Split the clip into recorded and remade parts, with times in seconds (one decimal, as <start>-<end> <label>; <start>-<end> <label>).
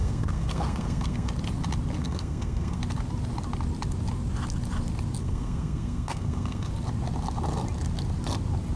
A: 0.0-1.3 remade; 1.3-2.0 recorded; 2.0-2.8 remade; 2.8-5.2 recorded; 5.2-6.7 remade; 6.7-8.8 recorded